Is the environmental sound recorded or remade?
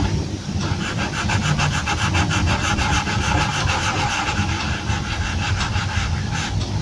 recorded